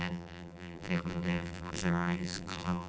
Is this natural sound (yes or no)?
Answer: no